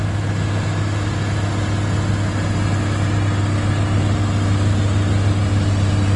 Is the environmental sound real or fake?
real